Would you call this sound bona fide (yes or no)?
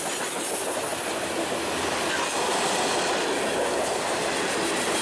yes